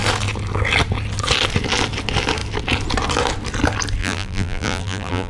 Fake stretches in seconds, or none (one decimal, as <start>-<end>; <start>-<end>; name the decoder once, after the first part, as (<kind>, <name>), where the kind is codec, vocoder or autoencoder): 4.0-5.3 (vocoder, BigVGAN v2)